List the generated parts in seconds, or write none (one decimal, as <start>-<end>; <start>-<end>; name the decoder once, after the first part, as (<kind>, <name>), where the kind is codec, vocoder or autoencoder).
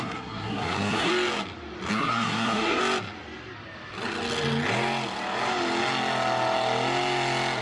0.0-1.1 (codec, SNAC); 1.9-2.8